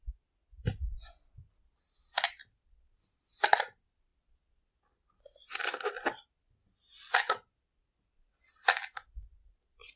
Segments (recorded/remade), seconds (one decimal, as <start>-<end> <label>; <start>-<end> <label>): 0.0-10.0 recorded